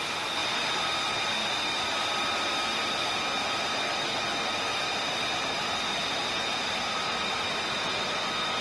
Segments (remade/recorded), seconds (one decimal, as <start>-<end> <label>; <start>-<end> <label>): 0.0-6.2 recorded; 6.2-6.7 remade; 6.7-8.6 recorded